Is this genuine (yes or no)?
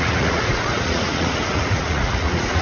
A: no